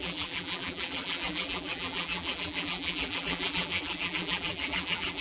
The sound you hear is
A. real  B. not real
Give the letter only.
B